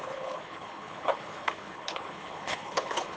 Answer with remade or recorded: remade